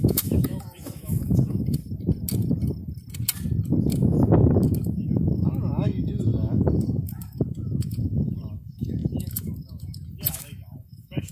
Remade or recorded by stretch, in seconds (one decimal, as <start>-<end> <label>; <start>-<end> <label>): 0.0-1.8 remade; 1.8-3.9 recorded; 3.9-11.3 remade